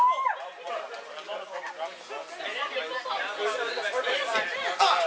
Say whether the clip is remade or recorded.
recorded